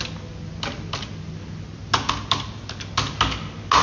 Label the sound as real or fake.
real